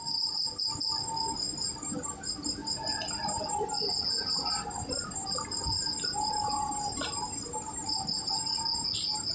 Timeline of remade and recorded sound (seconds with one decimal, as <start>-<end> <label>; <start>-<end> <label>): 0.0-9.3 recorded